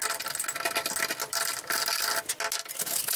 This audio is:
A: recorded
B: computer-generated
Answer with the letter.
A